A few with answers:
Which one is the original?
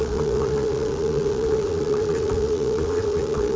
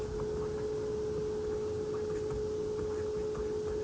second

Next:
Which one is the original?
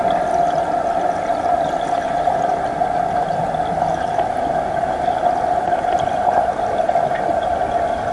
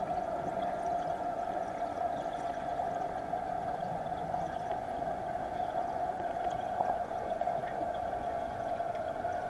first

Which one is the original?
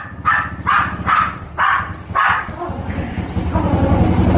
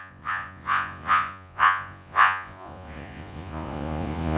first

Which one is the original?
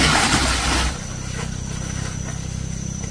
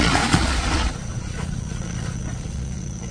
first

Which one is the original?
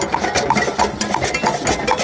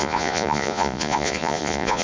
first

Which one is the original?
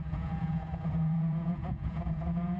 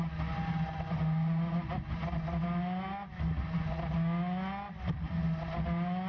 second